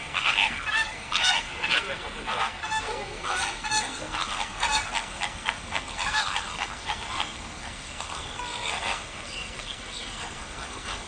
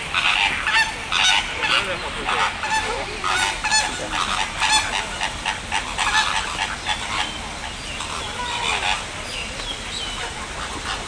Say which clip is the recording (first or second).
second